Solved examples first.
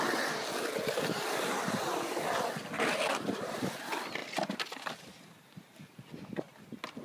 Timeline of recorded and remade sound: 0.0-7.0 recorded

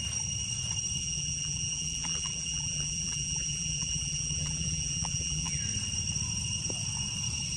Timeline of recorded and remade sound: 0.0-1.0 recorded; 1.0-5.6 remade; 5.6-7.6 recorded

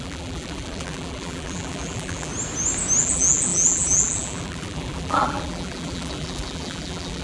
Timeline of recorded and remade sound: 0.0-2.3 remade; 2.3-3.0 recorded; 3.0-7.2 remade